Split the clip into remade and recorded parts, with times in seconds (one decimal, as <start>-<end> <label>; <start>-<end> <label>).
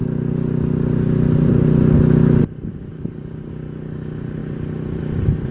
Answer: 0.0-2.9 recorded; 2.9-3.5 remade; 3.5-4.4 recorded; 4.4-5.0 remade; 5.0-5.5 recorded